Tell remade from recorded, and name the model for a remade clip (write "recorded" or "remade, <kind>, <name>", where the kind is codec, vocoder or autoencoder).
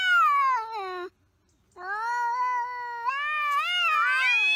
recorded